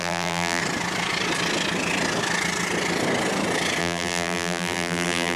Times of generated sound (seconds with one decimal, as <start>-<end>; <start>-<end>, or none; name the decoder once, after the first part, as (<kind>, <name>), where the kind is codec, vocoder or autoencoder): 0.0-0.6 (vocoder, BigVGAN v2); 3.8-5.4